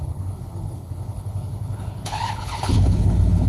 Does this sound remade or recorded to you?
remade